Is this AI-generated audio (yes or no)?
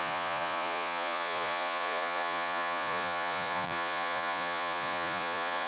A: yes